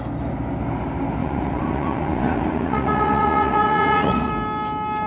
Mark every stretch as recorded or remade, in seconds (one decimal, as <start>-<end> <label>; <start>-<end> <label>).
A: 0.0-1.2 recorded; 1.2-4.3 remade; 4.3-5.1 recorded